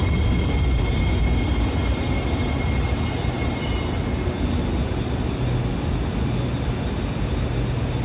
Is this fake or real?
real